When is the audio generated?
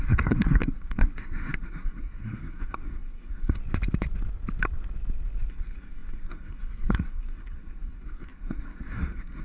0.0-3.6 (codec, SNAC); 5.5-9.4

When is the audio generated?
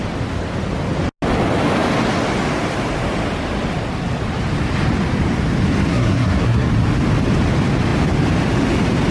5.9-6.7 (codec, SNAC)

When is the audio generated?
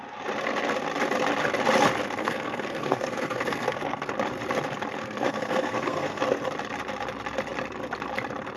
2.2-4.1 (codec, SNAC); 5.0-6.2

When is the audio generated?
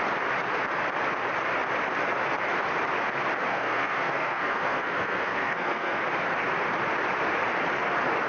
3.5-6.0 (codec, SNAC)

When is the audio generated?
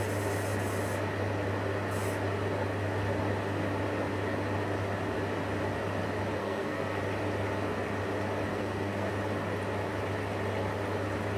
6.4-7.0 (codec, SNAC); 8.5-9.1